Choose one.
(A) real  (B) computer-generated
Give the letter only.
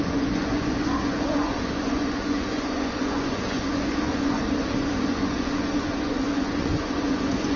B